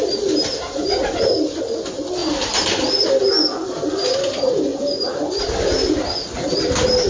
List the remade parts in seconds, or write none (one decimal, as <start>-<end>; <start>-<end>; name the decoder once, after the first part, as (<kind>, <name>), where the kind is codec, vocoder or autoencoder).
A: 2.2-2.9 (vocoder, BigVGAN v2)